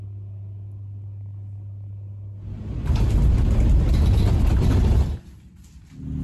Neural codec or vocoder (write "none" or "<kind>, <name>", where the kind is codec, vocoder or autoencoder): none